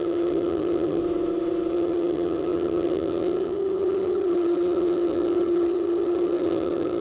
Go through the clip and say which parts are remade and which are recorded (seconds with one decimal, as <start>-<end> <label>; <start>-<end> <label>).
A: 0.0-1.0 remade; 1.0-1.7 recorded; 1.7-7.0 remade